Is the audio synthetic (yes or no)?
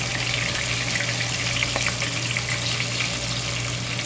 no